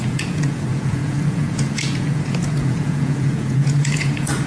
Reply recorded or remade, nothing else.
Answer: remade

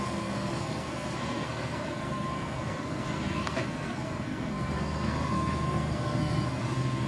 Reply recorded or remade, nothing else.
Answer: remade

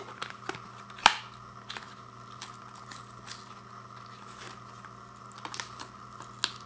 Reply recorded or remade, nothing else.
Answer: recorded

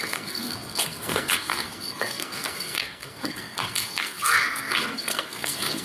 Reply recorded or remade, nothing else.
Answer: remade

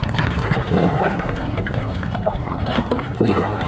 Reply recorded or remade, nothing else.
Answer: remade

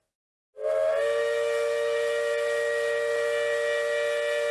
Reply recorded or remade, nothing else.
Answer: recorded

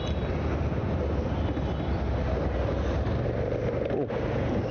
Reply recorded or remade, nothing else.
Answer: recorded